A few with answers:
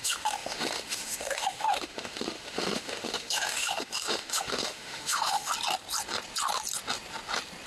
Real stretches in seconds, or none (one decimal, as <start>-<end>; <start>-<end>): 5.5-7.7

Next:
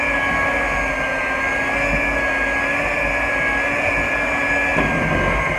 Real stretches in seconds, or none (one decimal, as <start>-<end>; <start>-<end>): 0.0-5.6

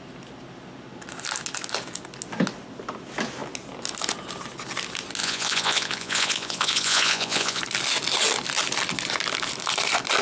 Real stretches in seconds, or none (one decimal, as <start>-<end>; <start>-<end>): 0.0-5.2; 7.6-10.2

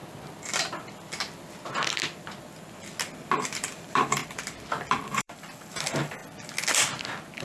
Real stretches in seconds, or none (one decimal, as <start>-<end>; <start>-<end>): 0.0-3.3; 4.2-4.7; 6.2-7.4

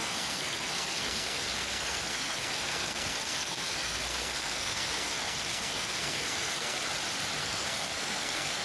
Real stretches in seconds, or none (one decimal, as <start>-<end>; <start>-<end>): 6.8-7.4

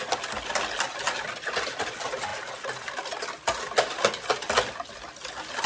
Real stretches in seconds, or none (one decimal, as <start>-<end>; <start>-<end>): 0.0-5.7

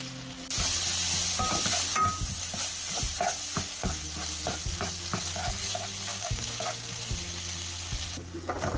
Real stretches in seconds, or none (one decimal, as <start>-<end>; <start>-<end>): 0.0-6.1; 7.0-8.8